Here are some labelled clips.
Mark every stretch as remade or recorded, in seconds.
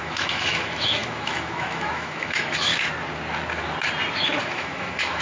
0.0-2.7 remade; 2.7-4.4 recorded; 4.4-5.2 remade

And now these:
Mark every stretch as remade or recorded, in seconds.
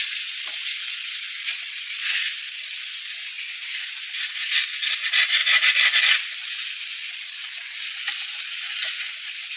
0.0-9.6 recorded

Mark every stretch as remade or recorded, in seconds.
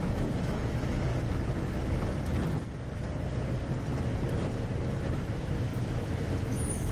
0.0-1.1 remade; 1.1-5.0 recorded; 5.0-6.9 remade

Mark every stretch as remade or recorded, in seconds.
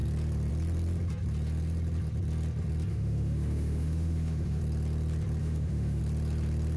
0.0-2.9 recorded; 2.9-4.6 remade; 4.6-5.4 recorded; 5.4-6.0 remade; 6.0-6.8 recorded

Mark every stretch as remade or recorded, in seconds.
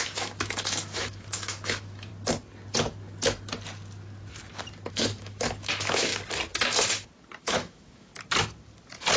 0.0-2.1 remade; 2.1-4.9 recorded; 4.9-6.1 remade; 6.1-7.4 recorded; 7.4-8.1 remade; 8.1-9.2 recorded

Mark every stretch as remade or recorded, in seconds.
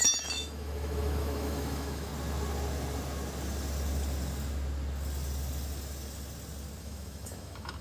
0.0-2.1 remade; 2.1-6.8 recorded; 6.8-7.8 remade